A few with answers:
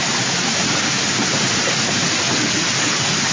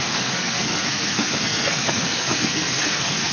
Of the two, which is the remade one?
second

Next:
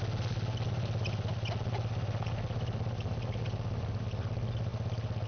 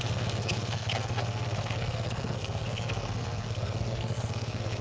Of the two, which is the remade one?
second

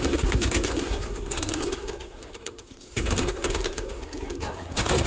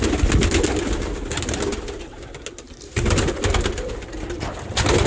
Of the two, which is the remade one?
first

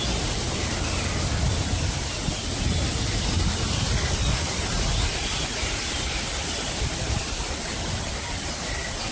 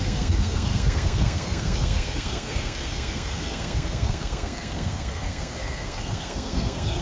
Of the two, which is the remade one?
second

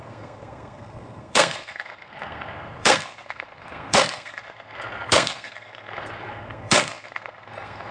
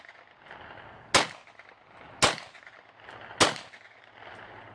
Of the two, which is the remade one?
first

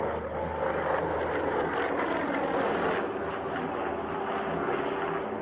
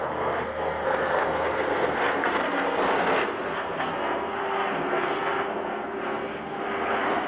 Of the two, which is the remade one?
second